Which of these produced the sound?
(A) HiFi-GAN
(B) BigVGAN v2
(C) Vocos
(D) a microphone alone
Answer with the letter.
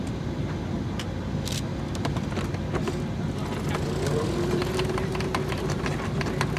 D